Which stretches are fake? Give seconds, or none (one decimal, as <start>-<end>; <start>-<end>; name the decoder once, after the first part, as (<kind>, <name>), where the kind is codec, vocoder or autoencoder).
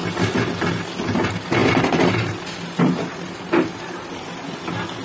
none